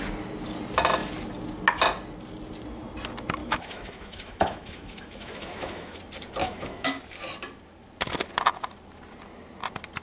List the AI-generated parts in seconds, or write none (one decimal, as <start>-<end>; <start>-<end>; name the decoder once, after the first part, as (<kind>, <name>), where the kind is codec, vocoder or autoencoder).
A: 3.4-6.0 (autoencoder, DAC-VAE); 6.4-7.0